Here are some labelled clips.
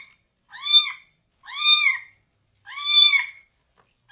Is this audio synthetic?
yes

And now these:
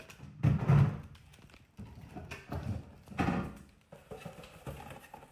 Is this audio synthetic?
no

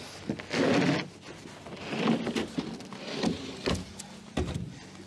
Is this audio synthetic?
no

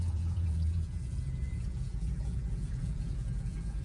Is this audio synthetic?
yes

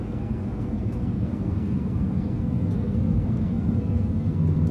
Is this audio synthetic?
yes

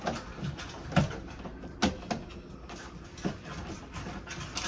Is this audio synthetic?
no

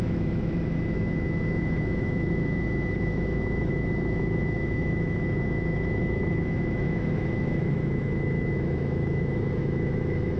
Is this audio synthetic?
yes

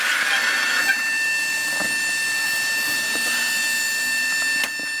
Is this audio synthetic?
no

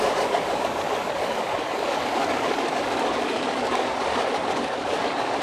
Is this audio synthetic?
yes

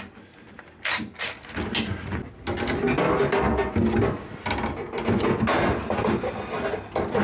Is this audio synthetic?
no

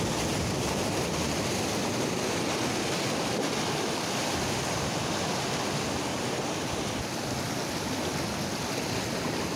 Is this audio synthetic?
no